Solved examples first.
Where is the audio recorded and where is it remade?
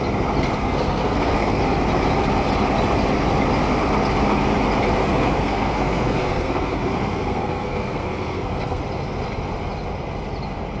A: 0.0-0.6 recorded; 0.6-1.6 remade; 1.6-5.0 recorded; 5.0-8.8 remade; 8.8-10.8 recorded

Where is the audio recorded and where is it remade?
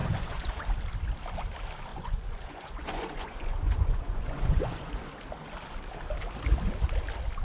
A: 0.0-0.5 remade; 0.5-1.9 recorded; 1.9-4.9 remade; 4.9-7.4 recorded